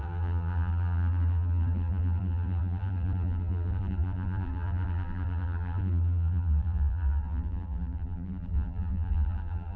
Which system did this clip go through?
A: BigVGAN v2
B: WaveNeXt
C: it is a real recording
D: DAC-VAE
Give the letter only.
A